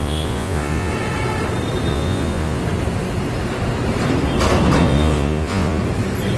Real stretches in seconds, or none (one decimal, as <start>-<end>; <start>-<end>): 0.9-1.9; 2.6-4.8; 5.8-6.4